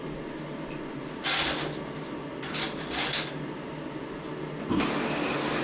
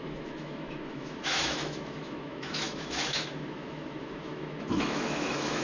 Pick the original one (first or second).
first